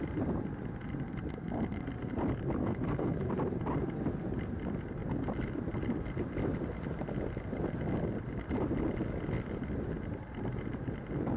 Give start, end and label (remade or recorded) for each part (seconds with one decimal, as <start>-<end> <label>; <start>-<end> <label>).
0.0-2.6 recorded; 2.6-3.3 remade; 3.3-11.4 recorded